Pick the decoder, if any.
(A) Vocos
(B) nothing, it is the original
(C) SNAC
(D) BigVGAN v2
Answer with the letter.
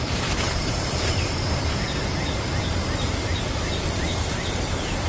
D